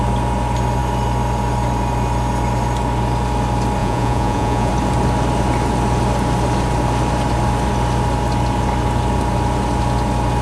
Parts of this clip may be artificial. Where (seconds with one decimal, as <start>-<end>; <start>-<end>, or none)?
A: 3.8-4.7

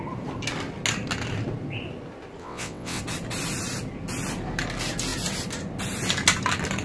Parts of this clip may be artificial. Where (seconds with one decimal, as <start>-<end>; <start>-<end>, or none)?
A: 2.4-3.0

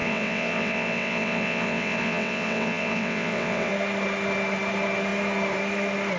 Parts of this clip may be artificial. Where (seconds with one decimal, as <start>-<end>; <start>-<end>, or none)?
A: 0.0-3.7

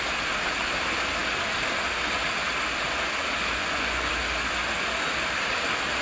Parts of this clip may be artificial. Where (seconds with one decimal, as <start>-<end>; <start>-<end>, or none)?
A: 3.6-4.1

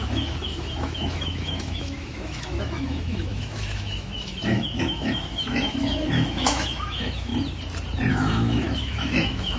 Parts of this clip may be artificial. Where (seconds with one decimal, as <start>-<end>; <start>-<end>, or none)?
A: 0.0-7.3; 8.1-9.6